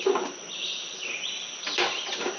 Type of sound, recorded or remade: recorded